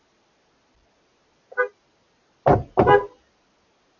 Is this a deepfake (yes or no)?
no